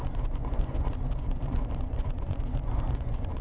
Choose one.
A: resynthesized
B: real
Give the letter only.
A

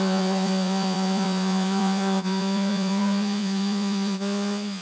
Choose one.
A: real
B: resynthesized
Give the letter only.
B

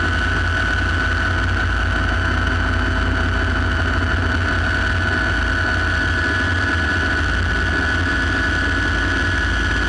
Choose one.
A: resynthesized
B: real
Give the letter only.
B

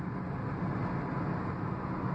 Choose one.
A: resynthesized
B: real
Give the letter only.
B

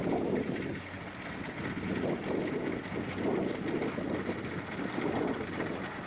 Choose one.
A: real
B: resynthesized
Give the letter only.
A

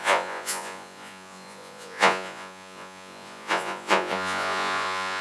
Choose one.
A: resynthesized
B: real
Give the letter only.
A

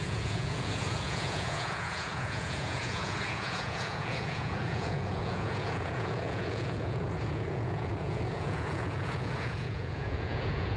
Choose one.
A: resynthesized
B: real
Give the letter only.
A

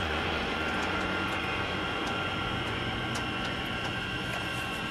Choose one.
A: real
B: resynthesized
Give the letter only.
B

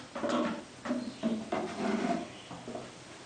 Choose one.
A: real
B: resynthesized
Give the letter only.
A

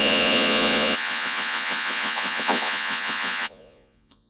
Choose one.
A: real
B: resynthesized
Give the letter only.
B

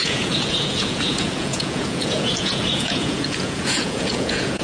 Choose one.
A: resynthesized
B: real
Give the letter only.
A